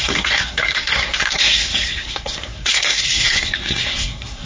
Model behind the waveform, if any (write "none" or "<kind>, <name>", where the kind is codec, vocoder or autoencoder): codec, SNAC